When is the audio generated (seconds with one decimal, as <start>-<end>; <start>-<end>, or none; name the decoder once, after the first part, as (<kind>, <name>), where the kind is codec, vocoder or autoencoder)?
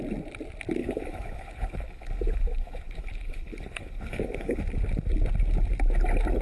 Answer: 0.8-4.6 (codec, HILCodec)